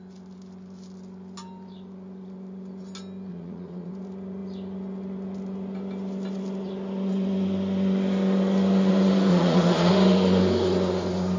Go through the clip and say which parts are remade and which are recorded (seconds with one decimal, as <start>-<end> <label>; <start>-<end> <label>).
0.0-3.3 recorded; 3.3-3.9 remade; 3.9-9.3 recorded; 9.3-9.9 remade; 9.9-11.4 recorded